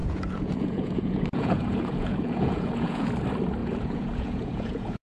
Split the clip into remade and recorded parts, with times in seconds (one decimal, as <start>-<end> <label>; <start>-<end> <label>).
0.0-3.1 remade; 3.1-3.6 recorded; 3.6-5.1 remade